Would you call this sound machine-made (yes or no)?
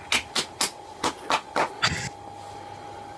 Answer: no